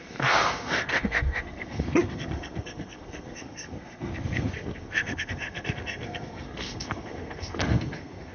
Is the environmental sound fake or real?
fake